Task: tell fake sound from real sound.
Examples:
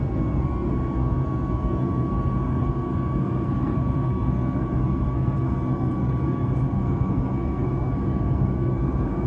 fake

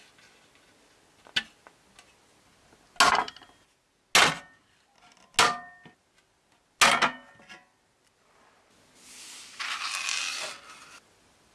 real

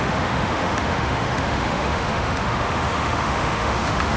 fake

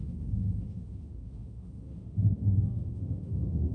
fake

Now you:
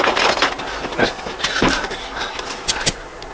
real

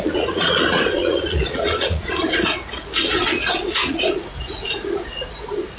fake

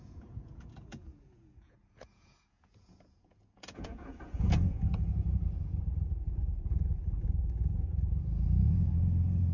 fake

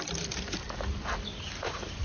real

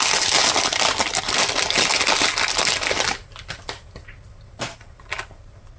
real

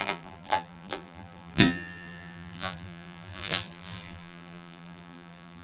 fake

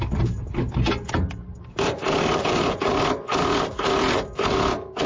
real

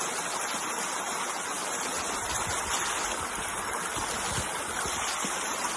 real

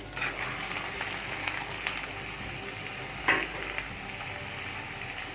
real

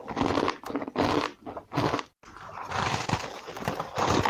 real